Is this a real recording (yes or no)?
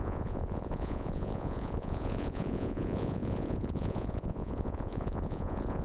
no